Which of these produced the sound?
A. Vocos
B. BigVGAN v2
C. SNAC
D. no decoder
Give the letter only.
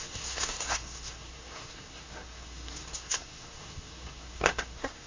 C